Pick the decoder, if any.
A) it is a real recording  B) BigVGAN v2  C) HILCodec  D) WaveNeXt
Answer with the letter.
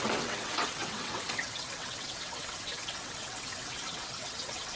D